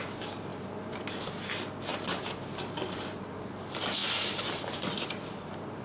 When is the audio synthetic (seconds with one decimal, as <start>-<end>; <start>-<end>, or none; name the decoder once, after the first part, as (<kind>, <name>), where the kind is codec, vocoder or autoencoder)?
0.5-1.2 (vocoder, BigVGAN v2); 1.9-3.5; 4.0-5.8